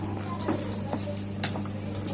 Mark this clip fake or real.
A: real